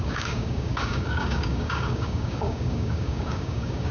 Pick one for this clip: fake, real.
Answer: fake